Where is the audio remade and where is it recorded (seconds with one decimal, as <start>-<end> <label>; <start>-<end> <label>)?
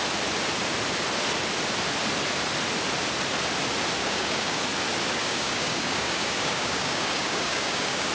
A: 0.0-4.0 recorded; 4.0-4.6 remade; 4.6-5.2 recorded; 5.2-8.1 remade